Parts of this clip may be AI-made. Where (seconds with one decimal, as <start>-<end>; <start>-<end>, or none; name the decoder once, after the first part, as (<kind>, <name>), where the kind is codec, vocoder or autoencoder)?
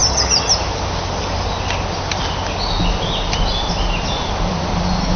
0.0-0.5 (vocoder, HiFi-GAN)